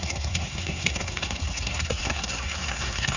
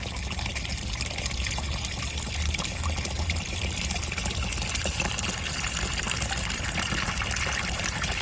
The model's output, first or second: first